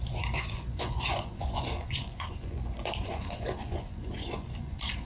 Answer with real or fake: fake